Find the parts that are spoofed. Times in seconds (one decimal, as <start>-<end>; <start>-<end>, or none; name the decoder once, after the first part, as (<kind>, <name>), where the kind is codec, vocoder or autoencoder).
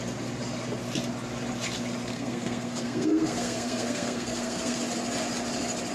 2.1-4.8 (codec, SNAC)